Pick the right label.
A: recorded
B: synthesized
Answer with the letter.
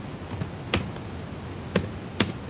A